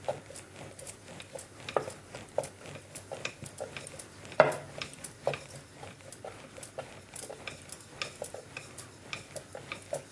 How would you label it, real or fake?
real